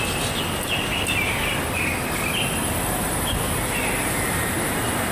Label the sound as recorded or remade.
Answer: recorded